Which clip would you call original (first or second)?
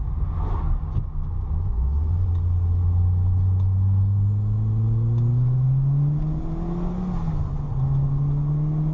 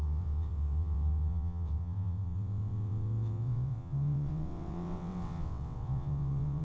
first